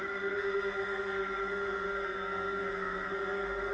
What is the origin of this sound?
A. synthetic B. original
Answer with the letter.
A